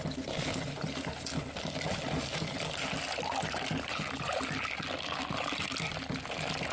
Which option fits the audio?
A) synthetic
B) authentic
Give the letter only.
B